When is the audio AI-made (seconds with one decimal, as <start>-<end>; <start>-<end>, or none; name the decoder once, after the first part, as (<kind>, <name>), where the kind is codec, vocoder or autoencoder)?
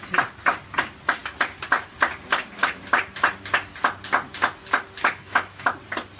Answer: 5.0-5.7 (autoencoder, DAC-VAE)